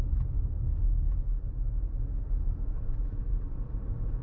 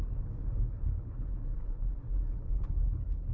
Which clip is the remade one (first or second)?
second